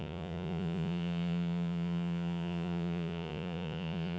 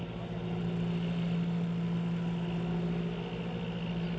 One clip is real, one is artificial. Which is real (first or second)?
second